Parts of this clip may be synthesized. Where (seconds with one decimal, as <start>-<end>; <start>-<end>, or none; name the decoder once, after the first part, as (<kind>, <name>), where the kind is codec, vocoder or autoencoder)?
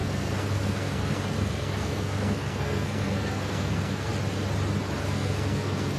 0.0-4.1 (codec, SNAC); 5.0-6.0